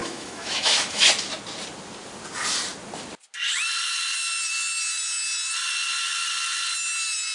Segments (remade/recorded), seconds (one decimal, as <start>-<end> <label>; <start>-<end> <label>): 0.0-1.1 remade; 1.1-7.3 recorded